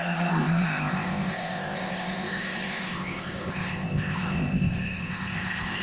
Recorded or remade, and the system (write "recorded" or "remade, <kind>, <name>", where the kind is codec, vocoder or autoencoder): remade, codec, ZipCodec